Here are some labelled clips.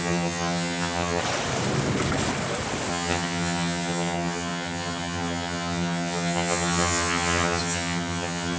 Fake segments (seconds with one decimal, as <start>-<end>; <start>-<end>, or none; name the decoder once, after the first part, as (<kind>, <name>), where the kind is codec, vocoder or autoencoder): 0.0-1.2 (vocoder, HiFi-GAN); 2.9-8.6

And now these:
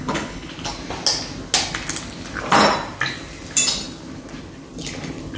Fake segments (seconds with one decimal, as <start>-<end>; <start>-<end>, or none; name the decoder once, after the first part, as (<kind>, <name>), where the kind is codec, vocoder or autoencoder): 0.0-0.5 (codec, HILCodec)

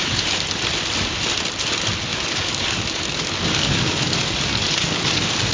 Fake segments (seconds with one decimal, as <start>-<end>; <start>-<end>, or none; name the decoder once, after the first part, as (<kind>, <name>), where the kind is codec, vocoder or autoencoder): 0.0-0.6 (codec, DAC); 2.1-5.5